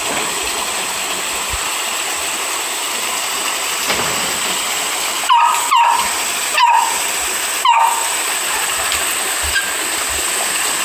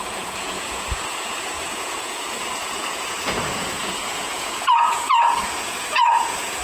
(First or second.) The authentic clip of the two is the first